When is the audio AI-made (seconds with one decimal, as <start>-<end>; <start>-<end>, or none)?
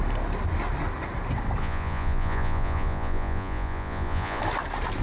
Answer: 1.6-4.4